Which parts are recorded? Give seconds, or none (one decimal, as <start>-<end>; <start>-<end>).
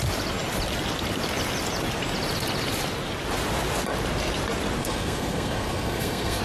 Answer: 0.0-4.8